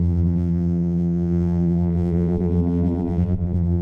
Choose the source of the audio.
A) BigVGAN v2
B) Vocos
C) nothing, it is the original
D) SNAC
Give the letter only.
A